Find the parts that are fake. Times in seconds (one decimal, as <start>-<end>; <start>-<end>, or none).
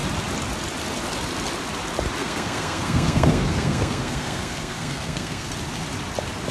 2.2-5.5